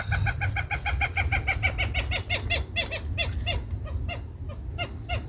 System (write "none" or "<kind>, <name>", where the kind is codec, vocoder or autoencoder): none